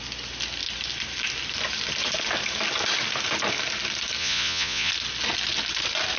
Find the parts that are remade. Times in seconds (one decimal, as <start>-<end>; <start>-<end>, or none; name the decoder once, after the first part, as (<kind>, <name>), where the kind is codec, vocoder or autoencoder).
4.2-4.9 (vocoder, Vocos)